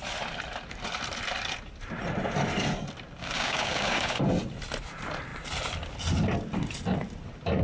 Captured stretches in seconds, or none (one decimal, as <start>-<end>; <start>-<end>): 0.0-3.2; 4.2-7.6